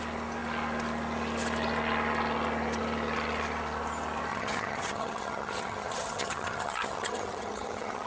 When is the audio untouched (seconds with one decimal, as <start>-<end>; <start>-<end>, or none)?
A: 0.0-4.3